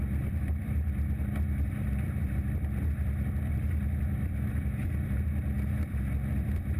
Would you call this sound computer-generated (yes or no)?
yes